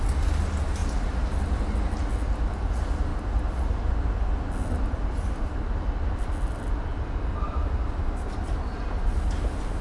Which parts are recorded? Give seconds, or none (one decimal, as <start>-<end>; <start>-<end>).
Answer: 0.0-7.3